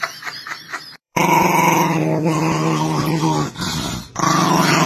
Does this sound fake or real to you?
fake